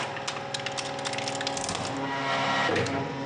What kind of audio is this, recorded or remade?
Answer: recorded